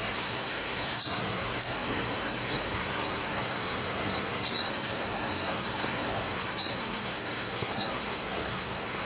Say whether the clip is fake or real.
fake